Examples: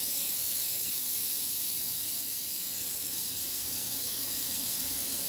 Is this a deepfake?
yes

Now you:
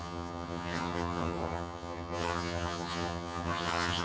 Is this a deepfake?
yes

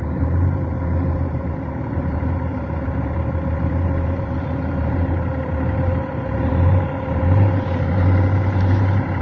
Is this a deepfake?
yes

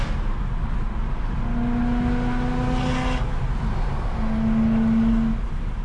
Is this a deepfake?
no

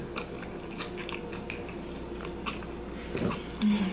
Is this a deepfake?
no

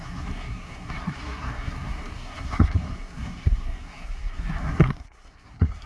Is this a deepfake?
yes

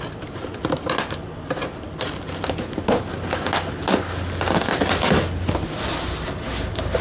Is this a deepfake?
no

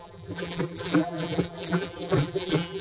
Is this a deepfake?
yes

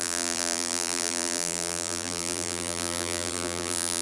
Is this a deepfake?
yes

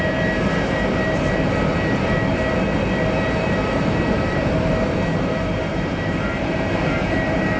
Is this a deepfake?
yes